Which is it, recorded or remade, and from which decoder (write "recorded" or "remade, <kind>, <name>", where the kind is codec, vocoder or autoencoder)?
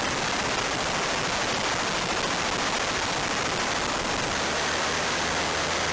recorded